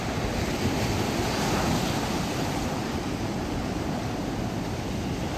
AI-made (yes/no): no